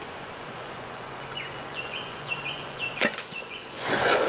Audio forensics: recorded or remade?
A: remade